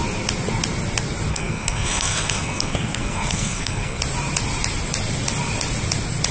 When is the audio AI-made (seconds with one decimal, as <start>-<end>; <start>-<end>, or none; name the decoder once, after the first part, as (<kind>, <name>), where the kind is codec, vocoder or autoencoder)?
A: 1.3-4.0 (codec, SNAC)